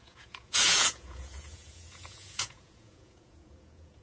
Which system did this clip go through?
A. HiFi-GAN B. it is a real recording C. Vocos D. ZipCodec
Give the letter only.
C